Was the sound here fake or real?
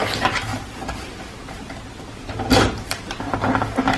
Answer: real